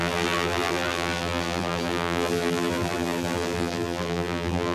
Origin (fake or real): fake